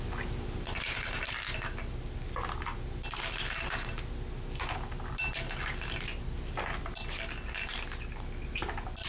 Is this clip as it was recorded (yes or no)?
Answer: yes